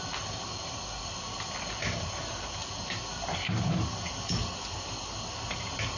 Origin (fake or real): real